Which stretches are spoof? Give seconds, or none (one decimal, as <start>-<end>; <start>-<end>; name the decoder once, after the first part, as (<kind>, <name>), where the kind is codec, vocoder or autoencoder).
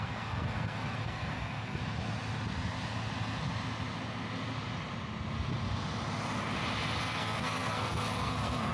0.0-1.8 (codec, SNAC); 7.0-8.7